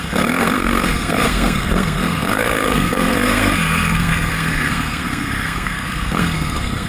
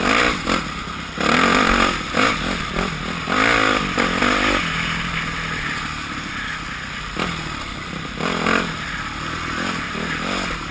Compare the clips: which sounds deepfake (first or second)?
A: first